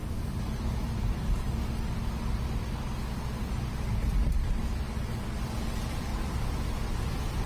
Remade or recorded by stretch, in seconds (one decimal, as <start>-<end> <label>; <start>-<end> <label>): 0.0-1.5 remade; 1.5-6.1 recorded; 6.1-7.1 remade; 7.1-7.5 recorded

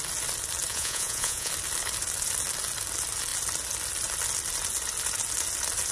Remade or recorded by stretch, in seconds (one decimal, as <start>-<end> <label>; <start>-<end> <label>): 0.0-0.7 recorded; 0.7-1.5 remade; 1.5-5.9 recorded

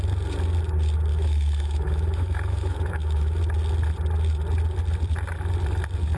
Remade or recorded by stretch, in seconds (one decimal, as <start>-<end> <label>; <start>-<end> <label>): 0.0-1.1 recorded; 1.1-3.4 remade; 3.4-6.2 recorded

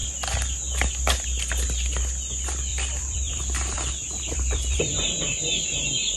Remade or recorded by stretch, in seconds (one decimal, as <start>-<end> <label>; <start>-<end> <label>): 0.0-2.7 recorded; 2.7-5.8 remade; 5.8-6.2 recorded

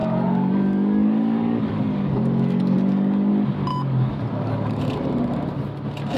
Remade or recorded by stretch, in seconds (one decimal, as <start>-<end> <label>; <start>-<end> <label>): 0.0-3.3 remade; 3.3-3.7 recorded; 3.7-4.8 remade; 4.8-6.2 recorded

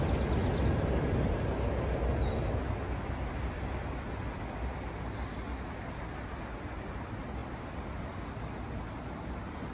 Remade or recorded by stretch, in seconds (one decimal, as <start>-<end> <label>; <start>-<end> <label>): 0.0-7.4 recorded; 7.4-8.5 remade; 8.5-9.7 recorded